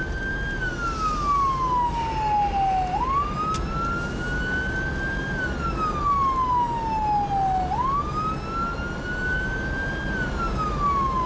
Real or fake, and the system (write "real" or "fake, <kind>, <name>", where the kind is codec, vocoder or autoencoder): real